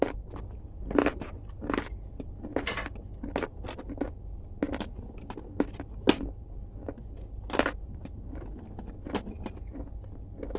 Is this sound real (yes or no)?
yes